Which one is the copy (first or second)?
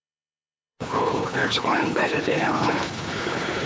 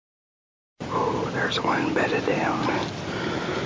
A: first